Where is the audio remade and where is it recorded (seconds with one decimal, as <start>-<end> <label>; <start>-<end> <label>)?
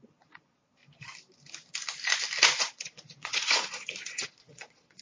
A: 0.0-0.8 remade; 0.8-2.6 recorded; 2.6-5.0 remade